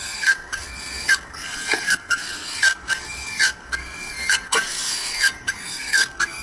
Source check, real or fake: fake